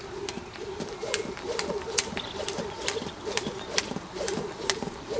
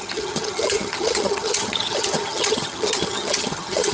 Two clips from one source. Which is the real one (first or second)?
first